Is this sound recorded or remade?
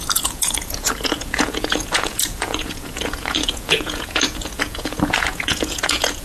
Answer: remade